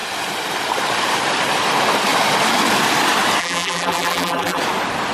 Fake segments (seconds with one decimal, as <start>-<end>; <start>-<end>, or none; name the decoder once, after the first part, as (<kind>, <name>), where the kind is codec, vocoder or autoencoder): 3.4-4.6 (vocoder, BigVGAN v2)